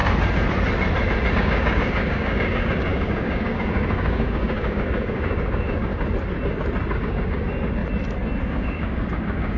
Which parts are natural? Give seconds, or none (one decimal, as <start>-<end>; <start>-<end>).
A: 0.0-1.3; 5.9-7.0; 7.8-8.4